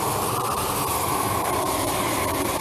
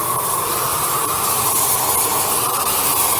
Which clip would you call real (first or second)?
second